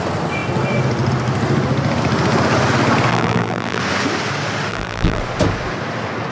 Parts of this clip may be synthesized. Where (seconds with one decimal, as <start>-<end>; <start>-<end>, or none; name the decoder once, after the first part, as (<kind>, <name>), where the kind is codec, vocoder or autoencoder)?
3.1-3.8 (vocoder, BigVGAN v2); 4.7-5.2